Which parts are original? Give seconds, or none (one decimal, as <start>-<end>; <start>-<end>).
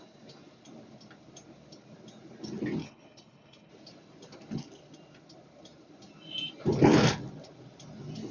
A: 0.0-2.8; 3.7-8.3